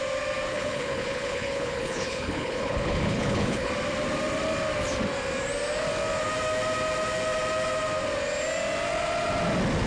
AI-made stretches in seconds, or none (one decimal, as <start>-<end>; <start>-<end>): 0.5-3.7